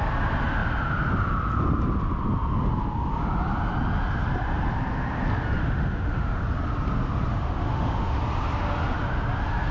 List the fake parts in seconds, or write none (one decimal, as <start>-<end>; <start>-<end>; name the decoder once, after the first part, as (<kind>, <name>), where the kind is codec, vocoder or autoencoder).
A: 5.6-6.4 (autoencoder, DAC-VAE); 7.3-8.2